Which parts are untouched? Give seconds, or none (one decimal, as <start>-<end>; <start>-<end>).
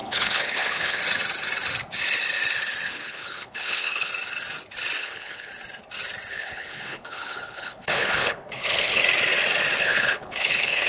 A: 1.0-2.9; 4.1-5.0; 5.5-6.3; 9.0-9.8